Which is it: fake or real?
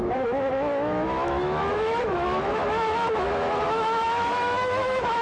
fake